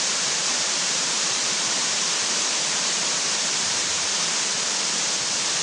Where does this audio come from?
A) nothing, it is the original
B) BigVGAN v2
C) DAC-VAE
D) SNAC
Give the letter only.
B